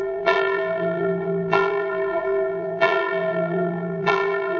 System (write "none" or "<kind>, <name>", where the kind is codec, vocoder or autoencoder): vocoder, BigVGAN v2